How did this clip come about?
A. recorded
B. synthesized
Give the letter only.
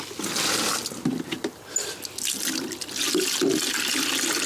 A